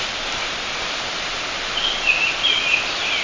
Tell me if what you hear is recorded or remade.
recorded